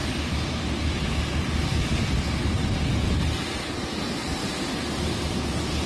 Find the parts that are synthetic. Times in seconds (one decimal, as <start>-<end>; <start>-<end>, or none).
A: none